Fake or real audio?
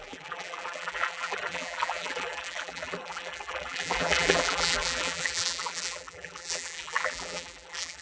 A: fake